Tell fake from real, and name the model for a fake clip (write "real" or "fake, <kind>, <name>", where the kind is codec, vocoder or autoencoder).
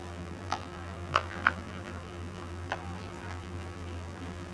fake, vocoder, BigVGAN v2